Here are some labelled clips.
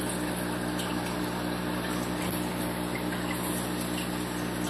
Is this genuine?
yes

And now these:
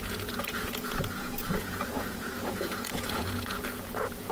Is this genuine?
no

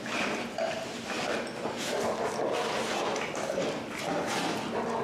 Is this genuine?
yes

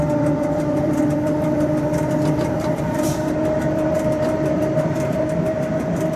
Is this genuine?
no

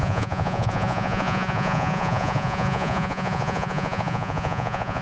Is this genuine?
no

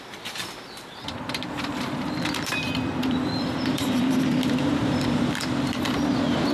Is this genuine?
no